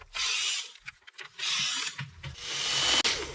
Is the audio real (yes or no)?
yes